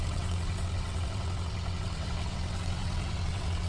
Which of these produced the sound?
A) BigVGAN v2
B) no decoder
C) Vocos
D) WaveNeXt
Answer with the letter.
D